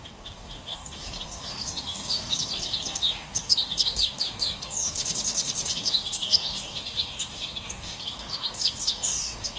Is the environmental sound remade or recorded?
remade